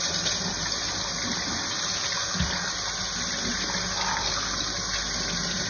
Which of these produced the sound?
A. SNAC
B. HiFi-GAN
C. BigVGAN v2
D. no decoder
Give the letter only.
D